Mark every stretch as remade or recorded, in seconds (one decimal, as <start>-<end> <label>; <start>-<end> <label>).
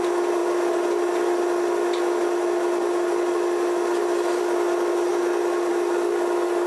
0.0-6.7 recorded